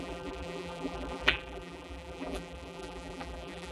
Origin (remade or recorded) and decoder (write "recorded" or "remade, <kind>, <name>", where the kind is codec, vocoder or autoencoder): remade, vocoder, BigVGAN v2